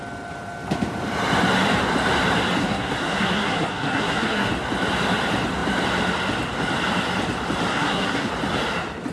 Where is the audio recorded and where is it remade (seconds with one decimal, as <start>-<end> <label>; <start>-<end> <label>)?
0.0-2.6 recorded; 2.6-4.5 remade; 4.5-7.7 recorded; 7.7-8.3 remade; 8.3-9.1 recorded

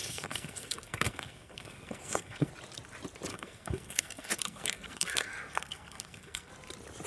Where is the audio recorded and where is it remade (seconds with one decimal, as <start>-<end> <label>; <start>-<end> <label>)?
0.0-2.5 remade; 2.5-3.3 recorded; 3.3-6.5 remade; 6.5-7.1 recorded

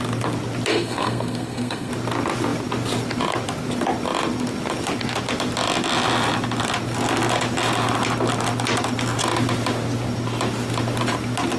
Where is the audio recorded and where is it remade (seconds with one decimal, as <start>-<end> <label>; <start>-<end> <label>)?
0.0-0.7 recorded; 0.7-1.9 remade; 1.9-11.6 recorded

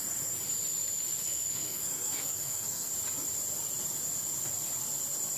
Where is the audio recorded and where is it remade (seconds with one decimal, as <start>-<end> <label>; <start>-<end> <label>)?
0.0-1.2 recorded; 1.2-2.9 remade; 2.9-5.4 recorded

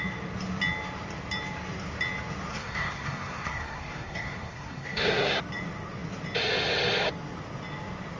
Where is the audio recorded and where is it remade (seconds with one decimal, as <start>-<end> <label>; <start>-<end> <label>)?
0.0-2.5 recorded; 2.5-5.4 remade; 5.4-8.2 recorded